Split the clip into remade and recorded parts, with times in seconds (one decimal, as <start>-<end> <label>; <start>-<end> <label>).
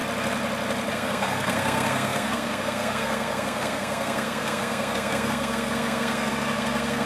0.0-0.9 recorded; 0.9-7.1 remade